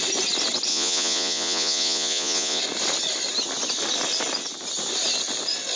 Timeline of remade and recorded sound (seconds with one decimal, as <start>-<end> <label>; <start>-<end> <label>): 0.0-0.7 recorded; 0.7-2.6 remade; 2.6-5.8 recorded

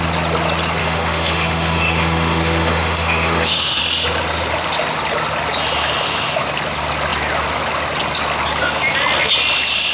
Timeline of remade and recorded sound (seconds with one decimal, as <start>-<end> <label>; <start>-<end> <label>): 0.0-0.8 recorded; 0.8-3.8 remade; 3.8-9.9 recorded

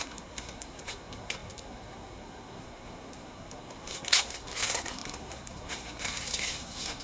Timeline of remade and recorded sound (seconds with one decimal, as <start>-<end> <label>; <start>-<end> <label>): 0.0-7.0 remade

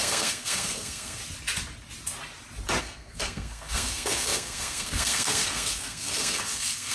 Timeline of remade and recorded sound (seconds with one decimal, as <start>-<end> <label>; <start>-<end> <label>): 0.0-1.2 remade; 1.2-2.8 recorded; 2.8-6.9 remade

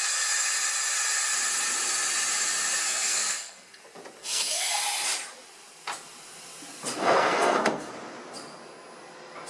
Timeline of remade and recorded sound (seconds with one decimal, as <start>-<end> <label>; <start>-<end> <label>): 0.0-2.8 recorded; 2.8-3.8 remade; 3.8-4.2 recorded; 4.2-4.8 remade; 4.8-7.0 recorded; 7.0-7.9 remade; 7.9-9.5 recorded

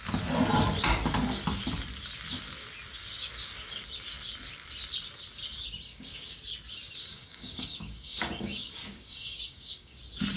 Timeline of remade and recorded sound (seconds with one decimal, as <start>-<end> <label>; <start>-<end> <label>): 0.0-5.9 recorded; 5.9-6.4 remade; 6.4-7.0 recorded; 7.0-10.0 remade; 10.0-10.4 recorded